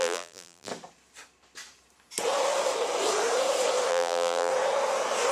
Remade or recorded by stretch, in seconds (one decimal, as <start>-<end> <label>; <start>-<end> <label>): 0.0-0.7 remade; 0.7-3.9 recorded; 3.9-4.5 remade; 4.5-5.3 recorded